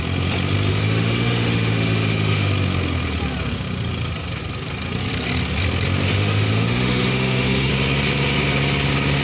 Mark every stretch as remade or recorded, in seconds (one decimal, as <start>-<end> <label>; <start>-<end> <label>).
0.0-0.7 recorded; 0.7-2.5 remade; 2.5-6.0 recorded; 6.0-7.7 remade; 7.7-9.2 recorded